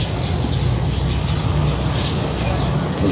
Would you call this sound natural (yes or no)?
yes